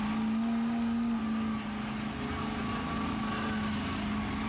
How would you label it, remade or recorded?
recorded